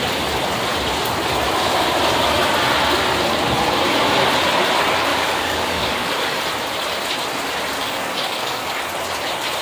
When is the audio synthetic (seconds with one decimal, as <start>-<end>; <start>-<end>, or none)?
5.1-6.4; 7.8-8.8